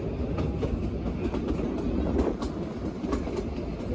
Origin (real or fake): real